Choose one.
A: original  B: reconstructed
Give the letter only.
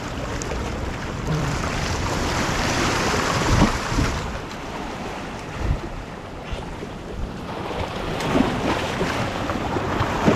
B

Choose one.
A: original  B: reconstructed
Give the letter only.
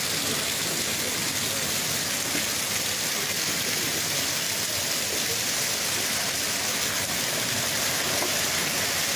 A